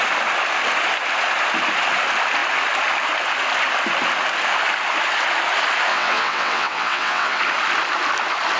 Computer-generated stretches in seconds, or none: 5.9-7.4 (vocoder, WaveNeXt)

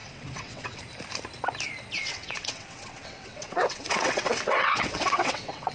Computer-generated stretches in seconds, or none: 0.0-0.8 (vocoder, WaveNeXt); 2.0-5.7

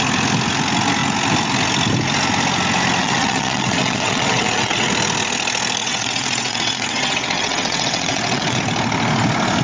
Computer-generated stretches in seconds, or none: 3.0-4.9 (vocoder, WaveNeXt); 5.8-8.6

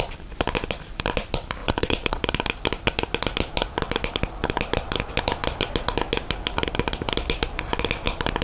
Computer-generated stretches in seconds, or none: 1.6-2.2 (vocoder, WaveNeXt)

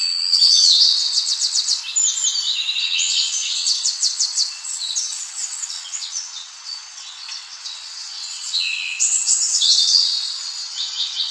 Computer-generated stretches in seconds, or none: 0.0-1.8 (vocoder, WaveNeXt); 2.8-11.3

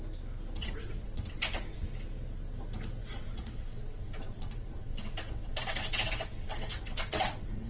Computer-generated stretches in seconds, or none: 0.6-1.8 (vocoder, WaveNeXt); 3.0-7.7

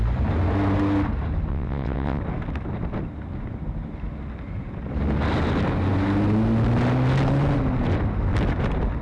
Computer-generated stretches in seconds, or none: 1.5-2.2 (vocoder, WaveNeXt)

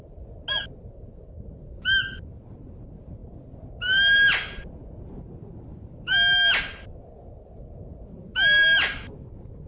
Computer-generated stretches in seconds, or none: none